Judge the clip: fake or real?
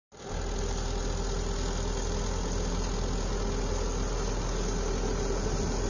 real